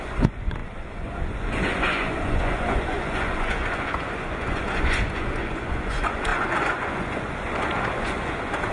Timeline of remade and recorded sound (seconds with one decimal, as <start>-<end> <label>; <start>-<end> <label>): 0.0-8.7 remade